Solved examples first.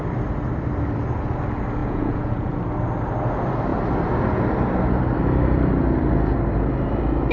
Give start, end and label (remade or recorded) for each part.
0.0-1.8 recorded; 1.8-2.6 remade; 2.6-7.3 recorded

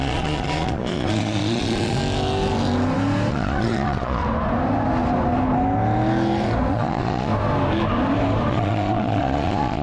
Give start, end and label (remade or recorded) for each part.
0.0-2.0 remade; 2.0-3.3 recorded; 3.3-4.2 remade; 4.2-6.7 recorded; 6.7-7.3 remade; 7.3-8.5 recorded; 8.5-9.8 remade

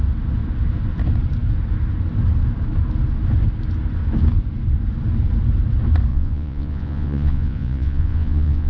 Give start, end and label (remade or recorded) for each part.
0.0-6.1 recorded; 6.1-8.7 remade

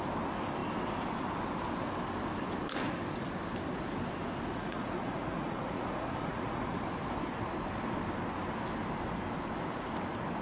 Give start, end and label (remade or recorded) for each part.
0.0-4.5 recorded; 4.5-6.8 remade; 6.8-10.4 recorded